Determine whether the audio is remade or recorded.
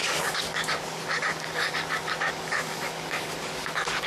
remade